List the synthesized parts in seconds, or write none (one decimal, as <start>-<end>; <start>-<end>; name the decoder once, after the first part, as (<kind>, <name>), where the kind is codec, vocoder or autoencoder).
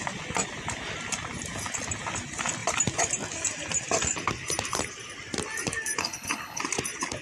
6.0-6.6 (codec, HILCodec)